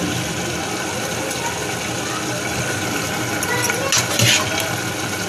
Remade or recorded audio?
recorded